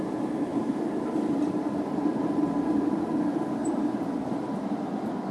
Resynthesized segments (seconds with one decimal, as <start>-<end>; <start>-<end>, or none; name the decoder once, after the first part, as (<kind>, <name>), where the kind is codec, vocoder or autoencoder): 0.5-2.0 (vocoder, BigVGAN v2); 3.6-4.5